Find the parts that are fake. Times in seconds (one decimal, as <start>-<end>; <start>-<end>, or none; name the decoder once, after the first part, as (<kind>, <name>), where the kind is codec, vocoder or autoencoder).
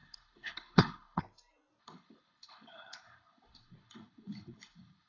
0.0-1.2 (codec, HILCodec); 1.8-5.1